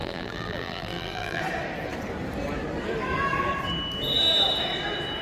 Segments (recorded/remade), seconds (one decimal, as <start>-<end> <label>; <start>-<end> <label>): 0.0-1.4 remade; 1.4-5.2 recorded